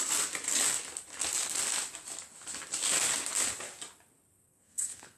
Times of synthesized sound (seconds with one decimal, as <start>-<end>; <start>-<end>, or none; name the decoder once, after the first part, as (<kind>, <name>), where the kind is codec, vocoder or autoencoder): 4.5-5.2 (codec, SNAC)